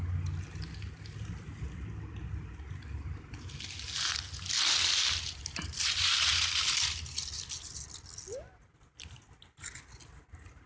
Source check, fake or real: real